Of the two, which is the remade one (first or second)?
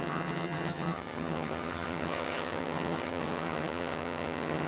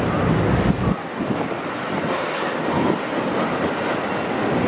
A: first